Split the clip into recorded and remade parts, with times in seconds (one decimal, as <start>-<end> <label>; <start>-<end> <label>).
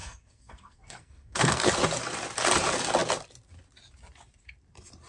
0.0-1.7 remade; 1.7-5.1 recorded